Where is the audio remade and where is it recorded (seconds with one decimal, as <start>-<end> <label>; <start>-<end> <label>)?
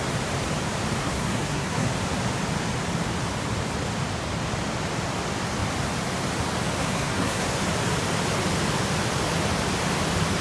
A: 0.0-1.0 recorded; 1.0-1.9 remade; 1.9-6.8 recorded; 6.8-7.6 remade; 7.6-10.4 recorded